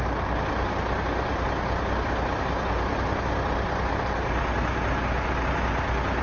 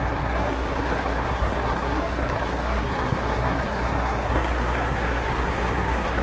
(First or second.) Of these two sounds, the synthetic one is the second